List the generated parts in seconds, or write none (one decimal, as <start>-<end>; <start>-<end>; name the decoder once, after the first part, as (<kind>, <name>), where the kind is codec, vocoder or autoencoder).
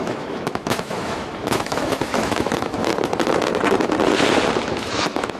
0.0-2.9 (autoencoder, DAC-VAE); 4.7-5.4